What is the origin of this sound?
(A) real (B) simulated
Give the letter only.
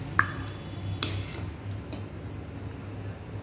A